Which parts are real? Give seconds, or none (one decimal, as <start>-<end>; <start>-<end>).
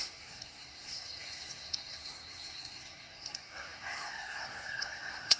none